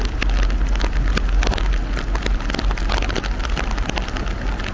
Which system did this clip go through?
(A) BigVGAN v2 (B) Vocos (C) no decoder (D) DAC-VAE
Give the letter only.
C